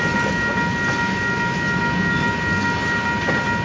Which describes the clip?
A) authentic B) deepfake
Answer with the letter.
A